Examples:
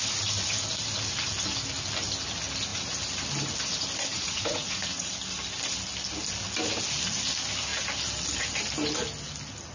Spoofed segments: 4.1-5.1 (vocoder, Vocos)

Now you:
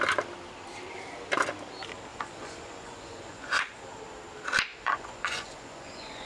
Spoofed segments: 2.1-3.8 (vocoder, Vocos); 4.7-6.3

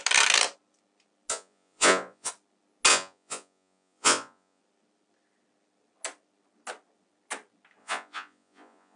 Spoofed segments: 1.3-2.3 (vocoder, Vocos); 2.9-4.6; 7.8-9.0

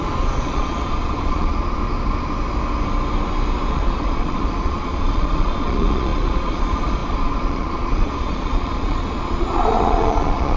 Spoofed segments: 0.0-1.8 (vocoder, Vocos); 3.7-10.6

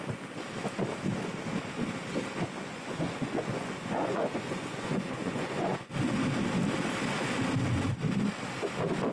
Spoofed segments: 2.7-5.9 (vocoder, Vocos)

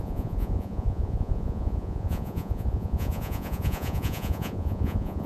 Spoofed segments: 0.0-5.3 (vocoder, Vocos)

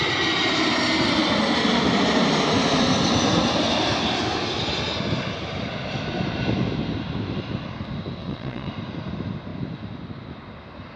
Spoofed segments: 8.2-8.7 (vocoder, Vocos)